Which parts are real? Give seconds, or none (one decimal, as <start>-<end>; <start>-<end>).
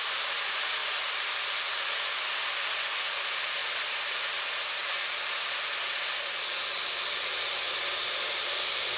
0.0-0.8; 1.4-9.0